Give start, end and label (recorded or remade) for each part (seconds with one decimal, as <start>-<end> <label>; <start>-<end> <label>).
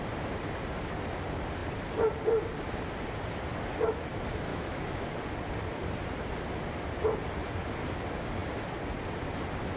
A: 0.0-4.5 recorded; 4.5-5.1 remade; 5.1-9.8 recorded